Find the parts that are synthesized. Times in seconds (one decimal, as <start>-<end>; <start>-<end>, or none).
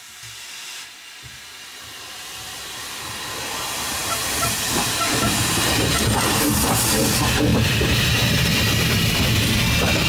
7.5-8.0; 8.5-9.2